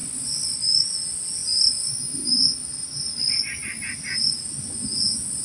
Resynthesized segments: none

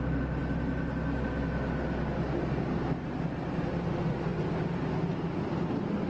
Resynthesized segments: none

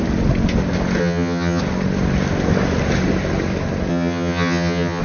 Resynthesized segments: 1.0-1.6 (vocoder, HiFi-GAN); 3.9-5.0

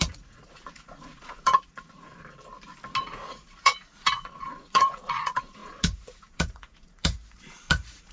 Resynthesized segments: 0.0-2.1 (vocoder, Vocos); 3.0-8.1

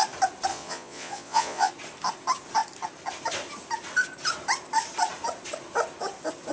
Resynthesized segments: 0.5-1.7 (vocoder, Vocos)

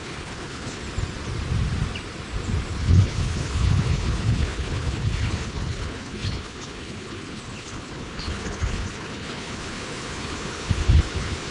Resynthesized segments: 0.0-0.8 (codec, HILCodec); 2.7-11.5